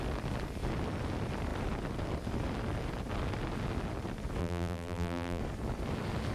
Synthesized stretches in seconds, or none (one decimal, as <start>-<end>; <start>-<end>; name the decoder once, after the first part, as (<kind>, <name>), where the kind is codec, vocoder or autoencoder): 4.4-5.4 (vocoder, BigVGAN v2)